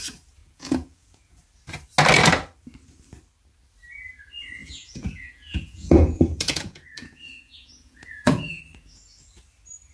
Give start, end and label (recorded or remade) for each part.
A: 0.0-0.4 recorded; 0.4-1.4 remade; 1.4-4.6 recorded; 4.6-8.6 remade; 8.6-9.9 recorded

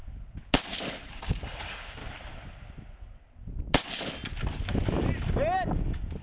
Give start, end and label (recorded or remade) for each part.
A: 0.0-1.1 recorded; 1.1-2.0 remade; 2.0-5.7 recorded; 5.7-6.2 remade

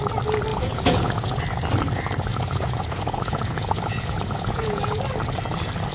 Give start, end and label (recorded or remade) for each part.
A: 0.0-0.5 recorded; 0.5-1.4 remade; 1.4-2.3 recorded; 2.3-5.0 remade; 5.0-5.9 recorded

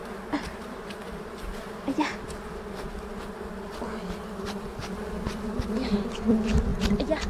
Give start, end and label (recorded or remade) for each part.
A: 0.0-7.3 recorded

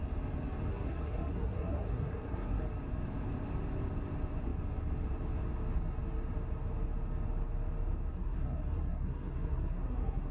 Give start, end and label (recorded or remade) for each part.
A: 0.0-0.7 recorded; 0.7-2.6 remade; 2.6-8.1 recorded; 8.1-10.3 remade

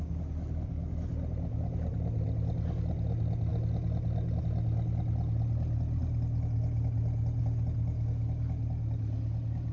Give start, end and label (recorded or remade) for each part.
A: 0.0-9.7 recorded